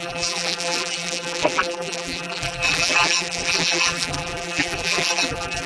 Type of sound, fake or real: fake